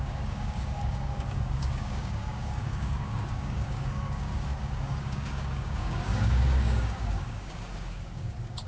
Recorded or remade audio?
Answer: remade